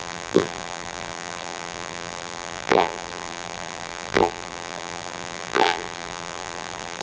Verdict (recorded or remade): remade